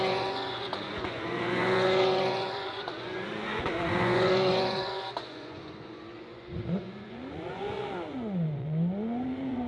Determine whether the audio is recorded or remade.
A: remade